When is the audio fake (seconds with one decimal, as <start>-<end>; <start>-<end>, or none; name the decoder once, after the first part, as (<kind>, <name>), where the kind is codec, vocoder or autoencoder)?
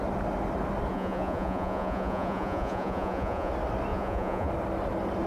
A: 0.9-3.5 (vocoder, Vocos); 3.9-4.5